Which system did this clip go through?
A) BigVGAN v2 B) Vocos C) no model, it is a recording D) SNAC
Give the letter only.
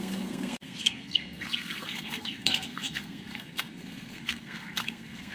D